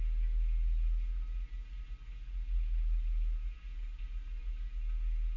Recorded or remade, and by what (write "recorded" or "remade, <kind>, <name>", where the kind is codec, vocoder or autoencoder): recorded